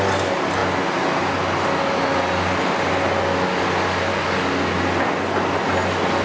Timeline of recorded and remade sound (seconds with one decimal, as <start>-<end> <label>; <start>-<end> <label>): 0.0-4.1 recorded; 4.1-4.6 remade; 4.6-6.2 recorded